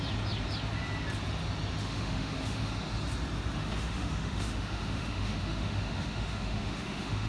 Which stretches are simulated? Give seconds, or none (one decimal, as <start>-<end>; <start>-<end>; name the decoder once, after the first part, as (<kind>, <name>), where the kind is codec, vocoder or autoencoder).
1.8-2.7 (autoencoder, DAC-VAE); 3.6-7.3